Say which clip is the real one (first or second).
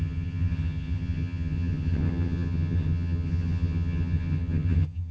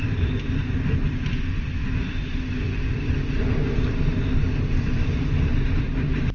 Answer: second